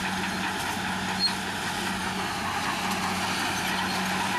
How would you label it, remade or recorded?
recorded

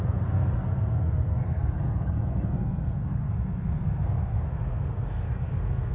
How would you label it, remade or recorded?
remade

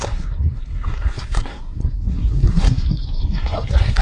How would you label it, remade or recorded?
remade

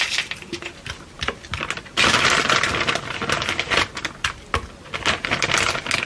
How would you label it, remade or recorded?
recorded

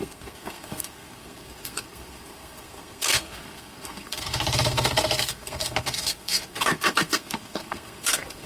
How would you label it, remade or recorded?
remade